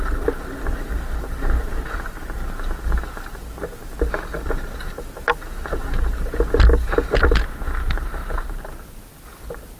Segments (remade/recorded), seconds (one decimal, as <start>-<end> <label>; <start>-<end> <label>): 0.0-9.8 recorded